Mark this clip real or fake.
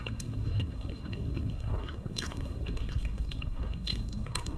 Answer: fake